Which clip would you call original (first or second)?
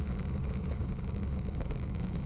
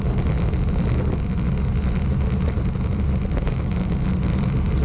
second